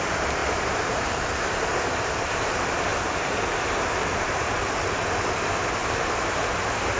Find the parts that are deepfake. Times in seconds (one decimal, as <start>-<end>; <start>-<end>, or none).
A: 0.4-1.3; 2.9-4.5; 5.8-6.6